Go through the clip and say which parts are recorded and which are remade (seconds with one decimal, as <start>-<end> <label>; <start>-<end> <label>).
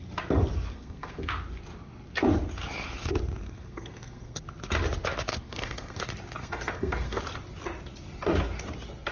0.0-0.7 recorded; 0.7-1.3 remade; 1.3-3.4 recorded; 3.4-4.4 remade; 4.4-5.3 recorded; 5.3-6.0 remade; 6.0-6.4 recorded; 6.4-7.2 remade; 7.2-9.1 recorded